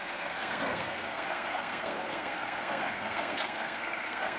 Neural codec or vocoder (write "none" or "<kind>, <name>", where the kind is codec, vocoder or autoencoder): codec, SNAC